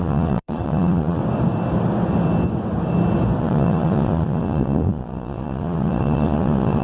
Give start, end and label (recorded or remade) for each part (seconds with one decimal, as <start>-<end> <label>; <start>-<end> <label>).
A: 0.0-1.2 remade; 1.2-3.4 recorded; 3.4-6.8 remade